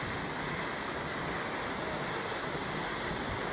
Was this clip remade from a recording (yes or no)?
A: no